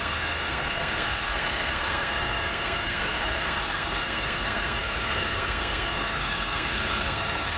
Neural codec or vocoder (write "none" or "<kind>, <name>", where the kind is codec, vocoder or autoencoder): codec, SNAC